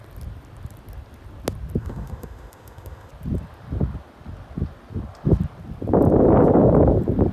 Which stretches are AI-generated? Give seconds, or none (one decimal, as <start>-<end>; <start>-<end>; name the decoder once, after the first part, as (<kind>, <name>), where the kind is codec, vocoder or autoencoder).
1.8-3.1 (autoencoder, DAC-VAE)